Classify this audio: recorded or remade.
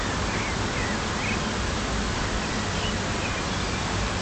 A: recorded